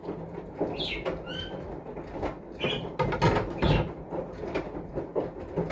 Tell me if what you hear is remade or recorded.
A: recorded